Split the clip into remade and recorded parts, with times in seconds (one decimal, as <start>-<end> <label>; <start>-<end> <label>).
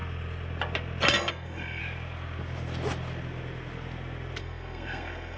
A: 0.0-1.3 recorded; 1.3-1.8 remade; 1.8-4.4 recorded; 4.4-5.4 remade